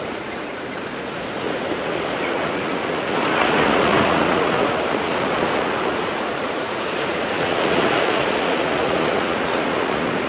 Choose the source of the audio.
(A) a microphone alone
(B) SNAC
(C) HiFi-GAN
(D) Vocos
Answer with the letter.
D